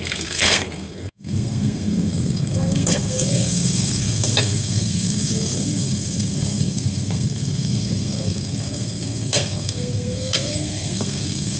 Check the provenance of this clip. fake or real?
fake